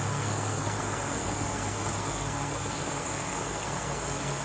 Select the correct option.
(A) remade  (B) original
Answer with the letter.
A